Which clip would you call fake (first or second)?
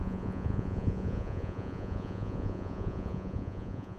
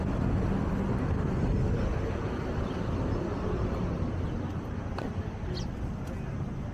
first